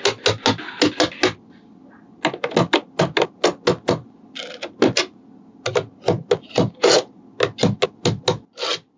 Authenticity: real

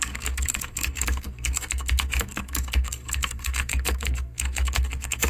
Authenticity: fake